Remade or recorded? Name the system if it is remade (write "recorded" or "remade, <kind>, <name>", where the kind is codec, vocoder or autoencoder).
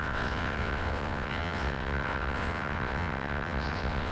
remade, vocoder, WaveNeXt